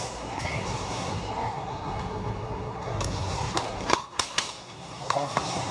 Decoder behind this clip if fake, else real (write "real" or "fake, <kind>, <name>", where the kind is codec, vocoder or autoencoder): fake, codec, SNAC